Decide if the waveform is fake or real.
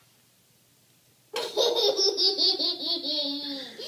real